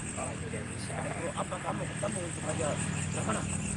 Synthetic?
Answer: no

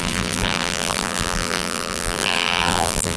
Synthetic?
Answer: yes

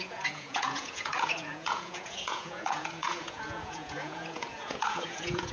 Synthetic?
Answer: yes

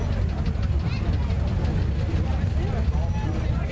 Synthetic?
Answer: no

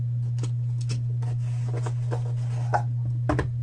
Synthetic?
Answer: no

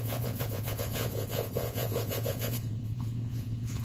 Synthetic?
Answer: yes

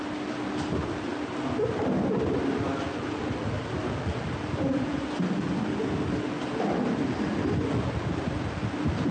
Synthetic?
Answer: no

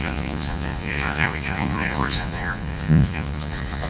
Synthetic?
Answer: yes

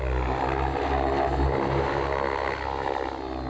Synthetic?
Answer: no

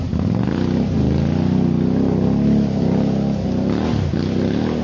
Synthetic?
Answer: no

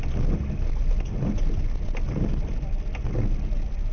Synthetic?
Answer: no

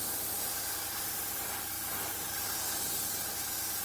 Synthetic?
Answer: no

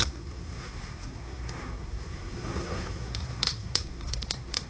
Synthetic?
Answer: yes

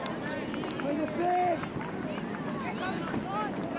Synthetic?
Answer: no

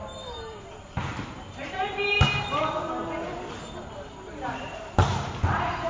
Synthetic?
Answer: yes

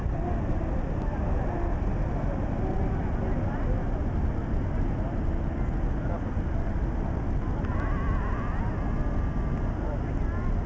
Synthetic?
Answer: no